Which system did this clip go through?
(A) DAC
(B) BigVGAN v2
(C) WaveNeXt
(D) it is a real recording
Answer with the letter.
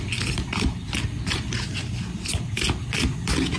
D